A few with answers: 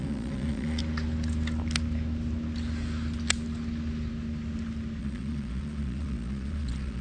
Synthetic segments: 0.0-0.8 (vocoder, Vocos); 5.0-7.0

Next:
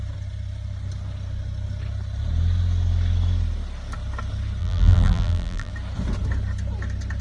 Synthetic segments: 4.6-5.7 (vocoder, BigVGAN v2)

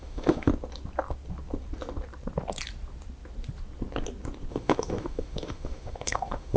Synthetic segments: 0.0-0.5 (autoencoder, DAC-VAE); 4.5-6.6

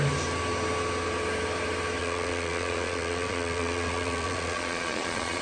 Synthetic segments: 2.0-5.4 (vocoder, Vocos)